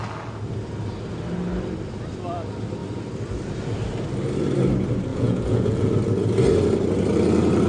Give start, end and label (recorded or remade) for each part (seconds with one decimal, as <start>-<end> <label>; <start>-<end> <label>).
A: 0.0-5.1 recorded; 5.1-5.9 remade; 5.9-7.7 recorded